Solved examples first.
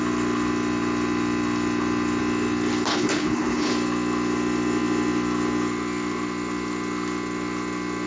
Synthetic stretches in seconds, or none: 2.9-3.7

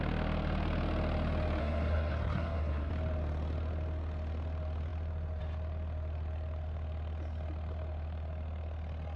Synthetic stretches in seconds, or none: 1.6-2.9

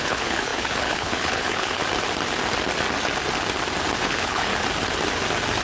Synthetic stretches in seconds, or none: 0.0-1.8; 4.0-4.5

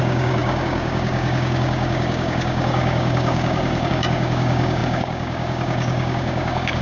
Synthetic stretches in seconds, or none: 0.0-6.8

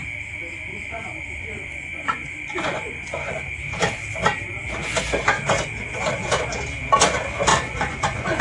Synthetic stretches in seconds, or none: 0.7-3.5; 7.5-8.4

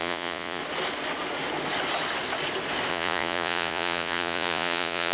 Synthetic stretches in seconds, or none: 0.0-0.6; 2.9-5.1

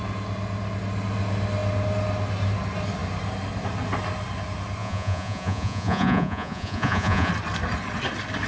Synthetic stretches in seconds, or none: 4.8-7.3

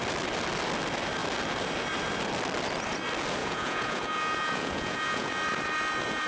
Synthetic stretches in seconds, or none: 3.4-5.3